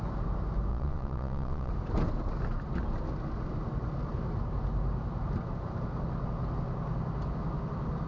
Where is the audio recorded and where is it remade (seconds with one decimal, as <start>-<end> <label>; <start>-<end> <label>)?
0.0-0.7 recorded; 0.7-1.7 remade; 1.7-8.1 recorded